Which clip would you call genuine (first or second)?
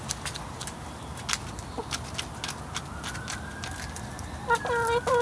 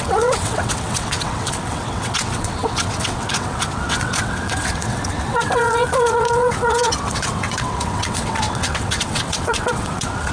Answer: first